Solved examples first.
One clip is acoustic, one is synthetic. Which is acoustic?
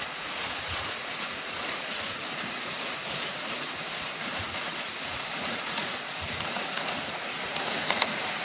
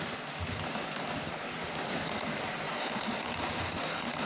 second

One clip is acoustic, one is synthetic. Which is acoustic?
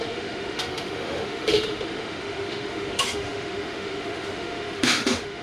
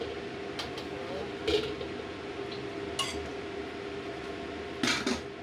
second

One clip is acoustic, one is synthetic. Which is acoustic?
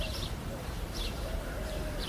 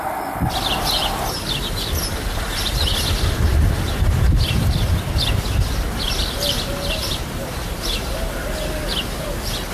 second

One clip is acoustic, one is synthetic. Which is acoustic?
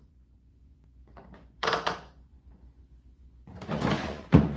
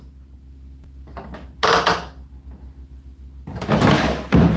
second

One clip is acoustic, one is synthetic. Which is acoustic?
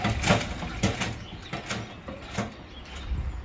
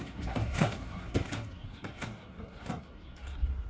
first